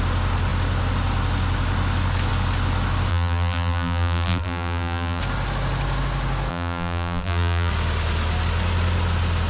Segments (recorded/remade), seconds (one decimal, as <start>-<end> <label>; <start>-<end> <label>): 0.0-3.1 recorded; 3.1-5.2 remade; 5.2-6.5 recorded; 6.5-7.7 remade; 7.7-9.5 recorded